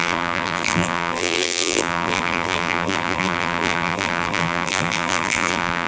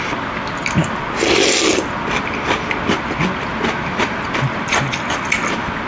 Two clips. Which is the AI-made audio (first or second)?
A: first